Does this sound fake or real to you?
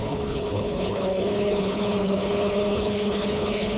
fake